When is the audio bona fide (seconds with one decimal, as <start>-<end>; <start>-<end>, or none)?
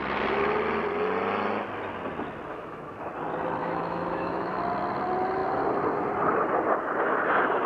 0.0-2.5; 3.1-3.6; 4.6-7.7